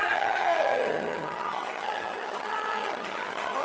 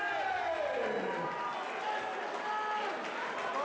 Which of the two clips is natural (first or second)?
second